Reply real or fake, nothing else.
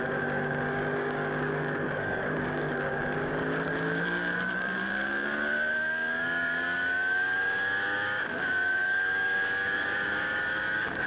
fake